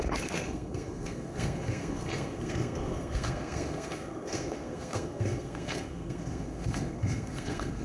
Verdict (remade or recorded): remade